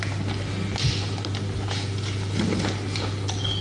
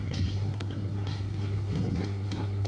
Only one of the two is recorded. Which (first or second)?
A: first